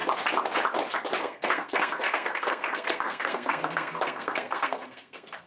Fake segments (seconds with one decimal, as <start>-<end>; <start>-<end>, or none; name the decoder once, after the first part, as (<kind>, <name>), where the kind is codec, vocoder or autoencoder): 1.2-5.5 (codec, SNAC)